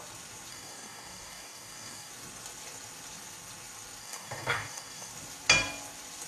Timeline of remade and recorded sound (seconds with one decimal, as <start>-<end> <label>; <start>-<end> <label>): 0.0-0.5 recorded; 0.5-2.1 remade; 2.1-4.0 recorded; 4.0-5.1 remade; 5.1-6.3 recorded